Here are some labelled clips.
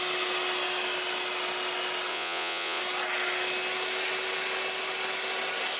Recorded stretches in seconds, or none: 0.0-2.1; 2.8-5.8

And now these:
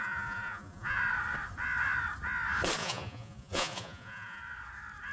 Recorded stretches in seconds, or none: 1.0-2.8; 4.4-5.1

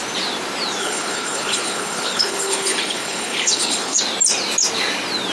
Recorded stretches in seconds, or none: 0.0-0.8; 4.0-5.3

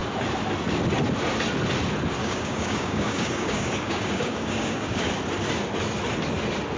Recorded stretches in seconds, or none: 0.0-2.2; 5.1-6.8

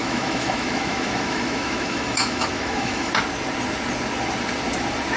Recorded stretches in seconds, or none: 3.1-5.2

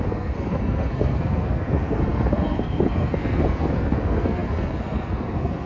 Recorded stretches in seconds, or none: none